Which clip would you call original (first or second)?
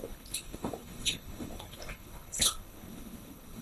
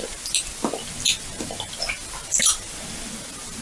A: second